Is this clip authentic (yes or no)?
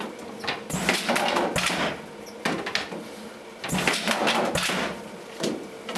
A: yes